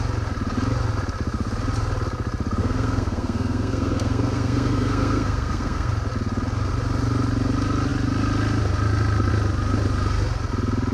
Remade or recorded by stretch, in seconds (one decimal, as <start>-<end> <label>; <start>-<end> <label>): 0.0-2.6 recorded; 2.6-5.9 remade; 5.9-10.9 recorded